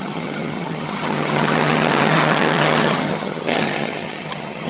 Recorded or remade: remade